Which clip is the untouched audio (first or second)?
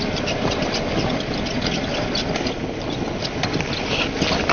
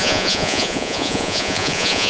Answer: first